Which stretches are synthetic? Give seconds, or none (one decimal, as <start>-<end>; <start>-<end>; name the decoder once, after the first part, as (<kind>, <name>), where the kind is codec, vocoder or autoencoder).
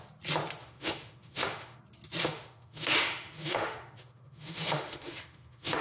0.6-1.8 (autoencoder, DAC-VAE); 2.2-5.8